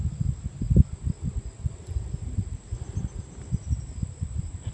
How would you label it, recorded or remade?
recorded